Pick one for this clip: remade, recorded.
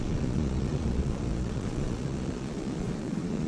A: remade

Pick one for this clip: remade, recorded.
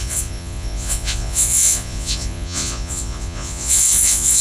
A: remade